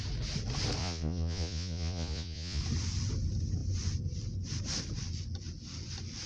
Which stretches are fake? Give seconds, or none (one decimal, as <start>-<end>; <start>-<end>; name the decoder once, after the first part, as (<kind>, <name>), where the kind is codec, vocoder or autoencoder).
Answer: 0.8-2.6 (vocoder, Vocos)